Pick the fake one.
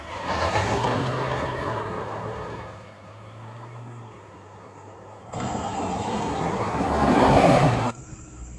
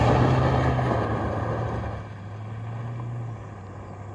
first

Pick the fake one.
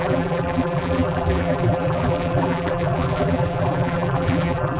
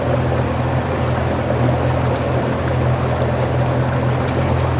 first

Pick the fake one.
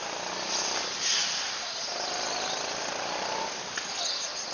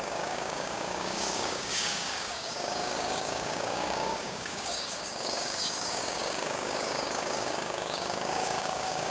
second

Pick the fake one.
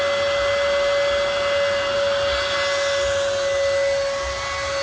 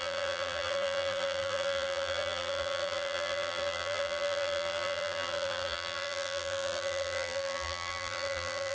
second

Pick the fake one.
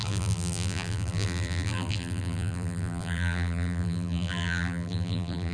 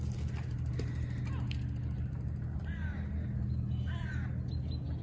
first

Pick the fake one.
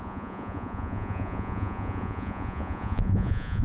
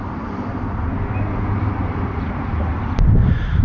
first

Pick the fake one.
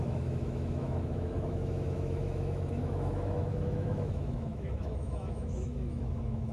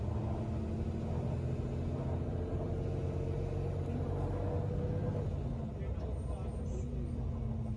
first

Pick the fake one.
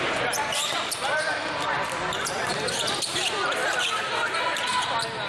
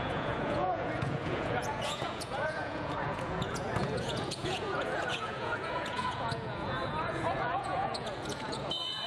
second